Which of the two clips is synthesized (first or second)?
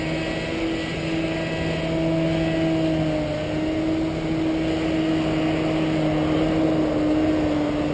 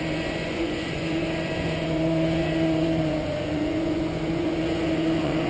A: second